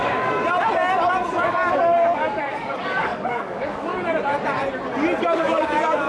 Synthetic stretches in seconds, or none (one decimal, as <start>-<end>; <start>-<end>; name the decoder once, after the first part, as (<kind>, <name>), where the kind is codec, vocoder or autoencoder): 0.0-0.4 (codec, DAC); 1.3-3.9; 5.2-6.1